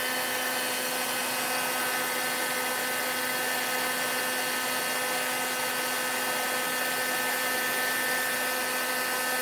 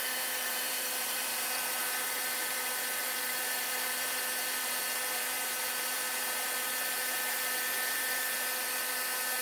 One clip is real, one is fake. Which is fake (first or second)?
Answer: second